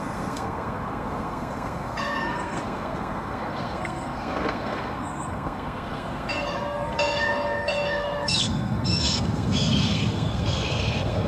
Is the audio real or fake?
fake